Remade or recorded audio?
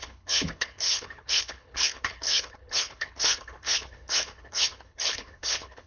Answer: remade